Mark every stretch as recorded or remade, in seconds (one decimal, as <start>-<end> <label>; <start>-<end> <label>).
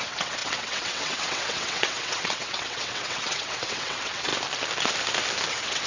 0.0-4.3 remade; 4.3-5.5 recorded; 5.5-5.9 remade